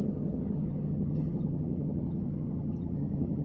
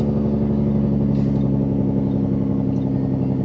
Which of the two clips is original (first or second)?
second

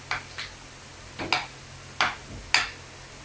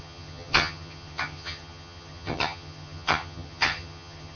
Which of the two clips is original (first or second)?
first